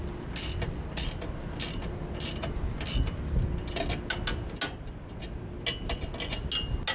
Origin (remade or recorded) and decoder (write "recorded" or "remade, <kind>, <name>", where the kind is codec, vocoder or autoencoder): recorded